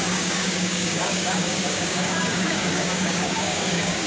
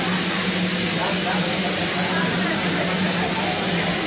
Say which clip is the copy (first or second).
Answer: first